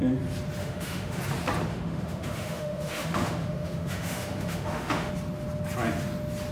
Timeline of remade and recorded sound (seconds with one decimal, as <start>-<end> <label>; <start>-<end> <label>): 0.0-0.6 recorded; 0.6-1.2 remade; 1.2-1.7 recorded; 1.7-5.1 remade; 5.1-6.5 recorded